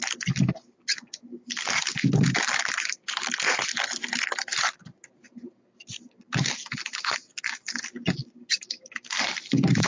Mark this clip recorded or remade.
recorded